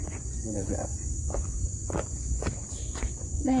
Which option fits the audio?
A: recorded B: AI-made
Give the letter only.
B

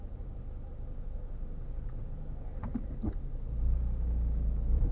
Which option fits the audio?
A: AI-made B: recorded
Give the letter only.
B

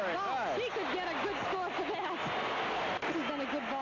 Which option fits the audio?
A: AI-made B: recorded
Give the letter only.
B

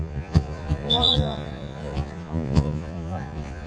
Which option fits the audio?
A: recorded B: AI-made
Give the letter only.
B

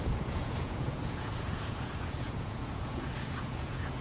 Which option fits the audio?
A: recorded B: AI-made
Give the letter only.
B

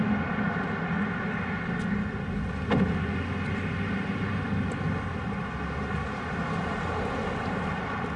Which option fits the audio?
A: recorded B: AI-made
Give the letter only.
A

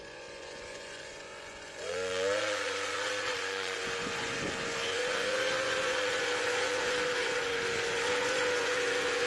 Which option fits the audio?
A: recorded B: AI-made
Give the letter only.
B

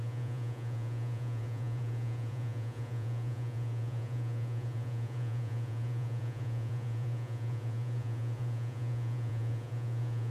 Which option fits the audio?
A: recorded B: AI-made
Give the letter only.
B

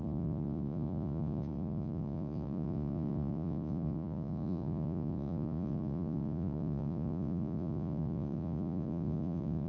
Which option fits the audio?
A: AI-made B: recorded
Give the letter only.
A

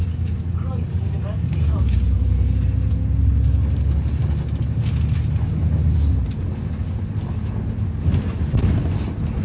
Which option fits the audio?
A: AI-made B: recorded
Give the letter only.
B